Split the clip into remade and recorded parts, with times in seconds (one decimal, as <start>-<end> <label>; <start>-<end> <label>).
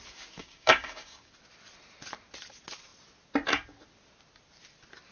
0.0-0.4 recorded; 0.4-1.3 remade; 1.3-5.1 recorded